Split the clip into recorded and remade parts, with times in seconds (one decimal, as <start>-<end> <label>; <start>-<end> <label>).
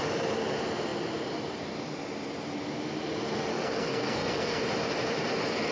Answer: 0.0-3.5 recorded; 3.5-4.6 remade; 4.6-5.7 recorded